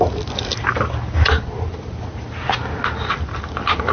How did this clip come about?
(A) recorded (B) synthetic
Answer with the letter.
A